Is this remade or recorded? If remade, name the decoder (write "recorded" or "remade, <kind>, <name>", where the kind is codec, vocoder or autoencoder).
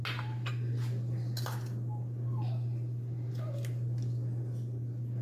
recorded